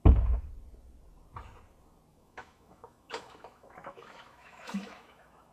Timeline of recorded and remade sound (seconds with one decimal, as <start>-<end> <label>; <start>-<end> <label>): 0.0-2.1 recorded; 2.1-5.5 remade